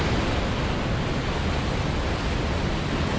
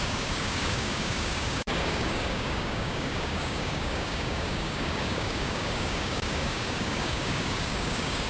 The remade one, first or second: second